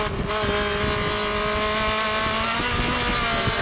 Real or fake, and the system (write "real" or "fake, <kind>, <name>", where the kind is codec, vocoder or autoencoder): real